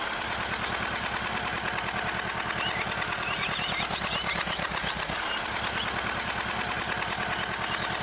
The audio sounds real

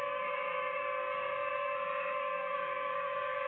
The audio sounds fake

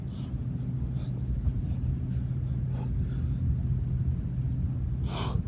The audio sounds real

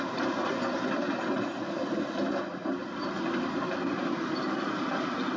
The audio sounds real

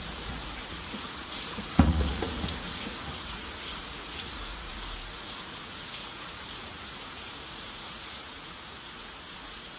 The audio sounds fake